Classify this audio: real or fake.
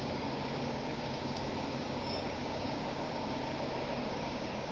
fake